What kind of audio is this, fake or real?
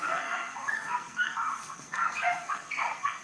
fake